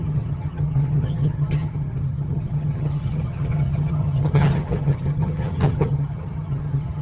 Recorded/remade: remade